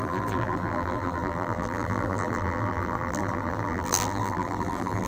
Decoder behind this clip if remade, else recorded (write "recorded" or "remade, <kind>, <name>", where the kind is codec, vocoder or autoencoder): remade, vocoder, BigVGAN v2